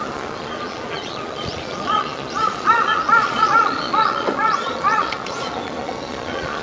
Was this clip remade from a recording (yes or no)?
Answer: yes